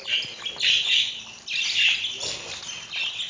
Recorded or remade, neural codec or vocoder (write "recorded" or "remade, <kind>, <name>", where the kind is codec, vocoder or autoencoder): recorded